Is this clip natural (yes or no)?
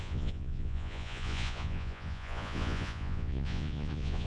no